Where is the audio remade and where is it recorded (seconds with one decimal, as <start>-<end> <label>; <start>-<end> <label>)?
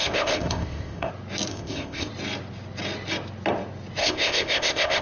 0.0-1.1 remade; 1.1-1.5 recorded; 1.5-2.1 remade; 2.1-4.0 recorded; 4.0-5.0 remade